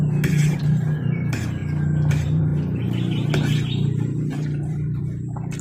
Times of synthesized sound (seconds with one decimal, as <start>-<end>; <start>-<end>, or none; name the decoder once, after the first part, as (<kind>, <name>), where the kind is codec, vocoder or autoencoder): 0.6-1.6 (vocoder, BigVGAN v2); 2.1-2.5; 3.6-5.6